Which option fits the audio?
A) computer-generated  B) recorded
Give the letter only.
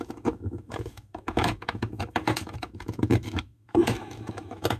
A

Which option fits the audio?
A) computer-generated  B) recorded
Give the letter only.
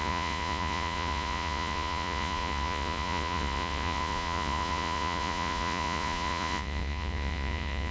A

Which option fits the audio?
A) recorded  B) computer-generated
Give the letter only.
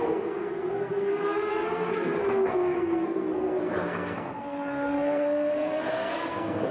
B